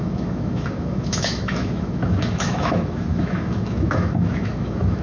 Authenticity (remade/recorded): remade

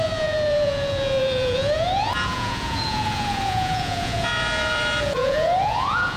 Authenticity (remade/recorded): remade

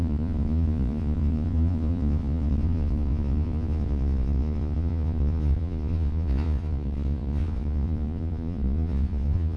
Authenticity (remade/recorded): remade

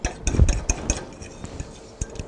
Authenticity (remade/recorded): recorded